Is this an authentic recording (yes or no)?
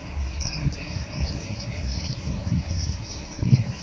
no